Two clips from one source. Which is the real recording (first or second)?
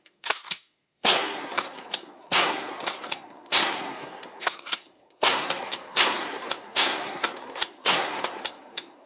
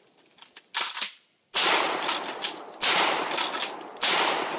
second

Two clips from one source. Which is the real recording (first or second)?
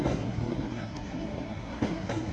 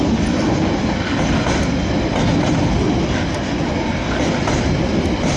second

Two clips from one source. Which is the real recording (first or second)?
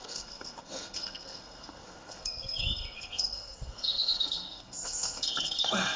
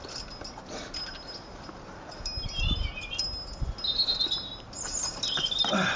second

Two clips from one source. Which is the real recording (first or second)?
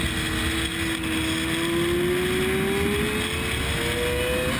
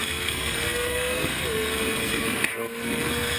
first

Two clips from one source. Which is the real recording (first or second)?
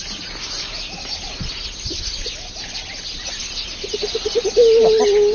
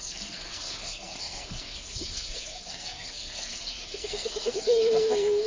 first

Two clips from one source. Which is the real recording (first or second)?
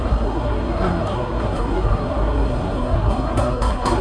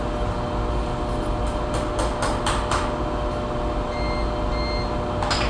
second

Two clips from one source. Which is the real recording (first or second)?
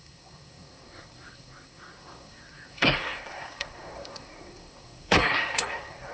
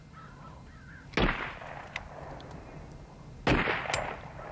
second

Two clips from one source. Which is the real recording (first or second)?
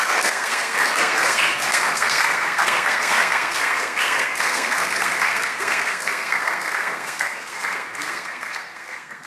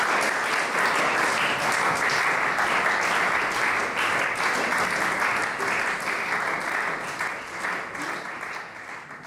second